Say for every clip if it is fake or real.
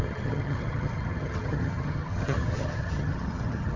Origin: fake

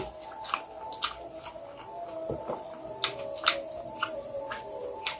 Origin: real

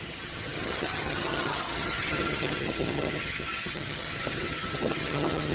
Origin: fake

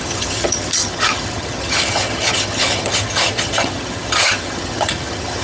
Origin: fake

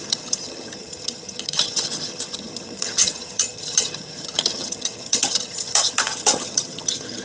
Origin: fake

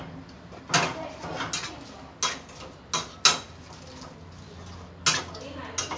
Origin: real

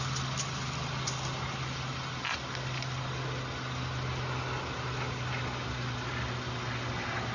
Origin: real